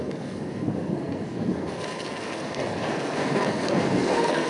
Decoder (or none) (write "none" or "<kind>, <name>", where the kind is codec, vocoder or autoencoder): codec, SNAC